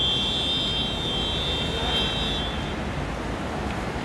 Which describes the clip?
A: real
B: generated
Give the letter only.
A